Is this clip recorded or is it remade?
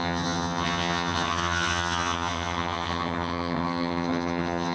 remade